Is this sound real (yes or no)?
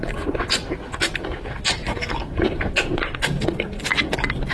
yes